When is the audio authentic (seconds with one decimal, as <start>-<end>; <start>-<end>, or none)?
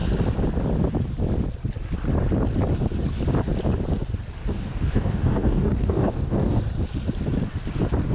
0.0-4.4; 6.6-8.1